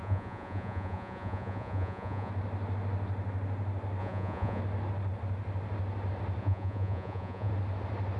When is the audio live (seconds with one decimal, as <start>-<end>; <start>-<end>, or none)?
2.3-4.0; 4.6-6.4; 7.5-8.2